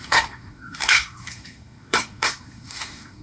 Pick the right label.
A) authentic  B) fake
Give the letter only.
B